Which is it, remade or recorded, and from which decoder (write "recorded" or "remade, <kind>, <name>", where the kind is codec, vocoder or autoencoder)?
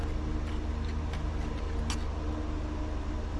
recorded